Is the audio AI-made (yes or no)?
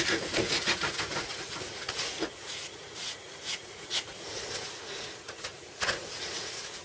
yes